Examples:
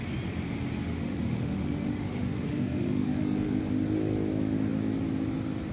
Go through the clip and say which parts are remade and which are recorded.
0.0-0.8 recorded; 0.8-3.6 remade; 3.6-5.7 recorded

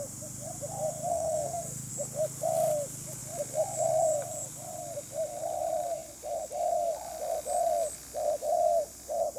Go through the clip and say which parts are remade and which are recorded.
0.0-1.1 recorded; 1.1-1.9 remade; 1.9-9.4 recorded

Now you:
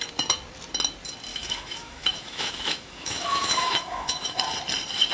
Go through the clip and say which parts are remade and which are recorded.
0.0-1.3 recorded; 1.3-4.4 remade; 4.4-5.1 recorded

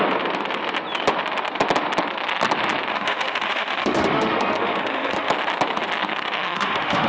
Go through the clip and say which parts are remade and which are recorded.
0.0-2.9 recorded; 2.9-5.3 remade; 5.3-6.1 recorded; 6.1-7.1 remade

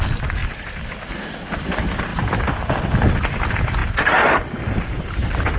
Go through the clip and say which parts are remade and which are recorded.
0.0-5.6 recorded

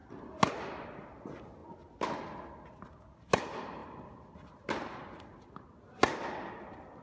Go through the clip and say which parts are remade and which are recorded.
0.0-7.0 recorded

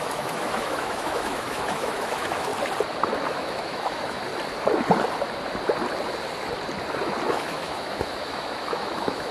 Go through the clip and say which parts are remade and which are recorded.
0.0-2.5 remade; 2.5-3.3 recorded; 3.3-4.3 remade; 4.3-7.3 recorded; 7.3-9.3 remade